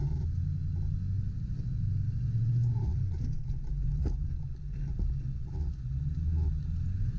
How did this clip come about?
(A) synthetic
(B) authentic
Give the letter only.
B